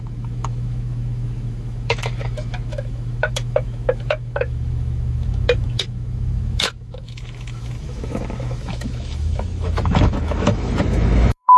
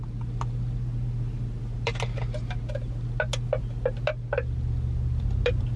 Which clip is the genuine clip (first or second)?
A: second